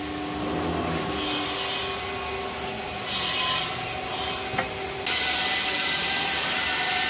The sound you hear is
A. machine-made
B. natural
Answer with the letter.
B